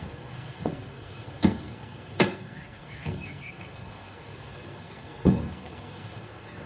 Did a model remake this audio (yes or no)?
yes